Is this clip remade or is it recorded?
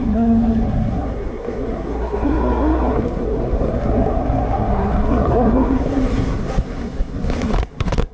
remade